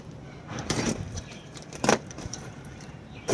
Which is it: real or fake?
fake